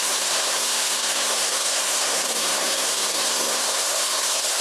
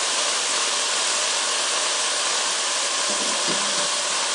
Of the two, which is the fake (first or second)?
first